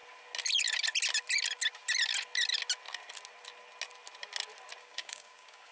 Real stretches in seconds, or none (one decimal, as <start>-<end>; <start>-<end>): 0.0-4.8